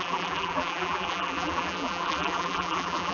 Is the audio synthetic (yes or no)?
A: yes